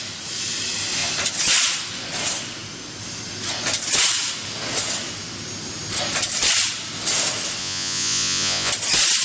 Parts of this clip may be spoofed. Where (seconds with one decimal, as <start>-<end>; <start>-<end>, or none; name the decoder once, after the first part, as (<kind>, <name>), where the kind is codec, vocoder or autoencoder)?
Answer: 7.6-8.7 (vocoder, Vocos)